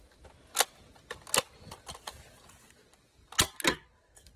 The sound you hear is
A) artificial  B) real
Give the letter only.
B